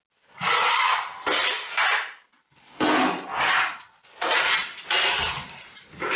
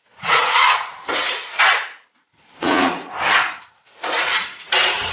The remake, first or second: second